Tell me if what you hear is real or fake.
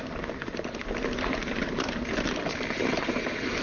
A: fake